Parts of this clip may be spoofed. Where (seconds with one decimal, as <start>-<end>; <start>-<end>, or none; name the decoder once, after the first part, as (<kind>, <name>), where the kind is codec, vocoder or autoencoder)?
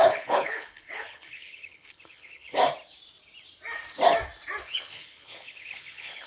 0.0-2.6 (codec, HILCodec); 4.6-6.3